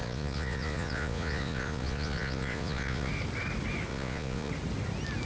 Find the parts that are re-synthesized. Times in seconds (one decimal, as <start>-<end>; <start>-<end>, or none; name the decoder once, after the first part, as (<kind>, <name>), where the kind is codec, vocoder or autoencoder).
0.0-3.1 (vocoder, Vocos); 3.9-4.5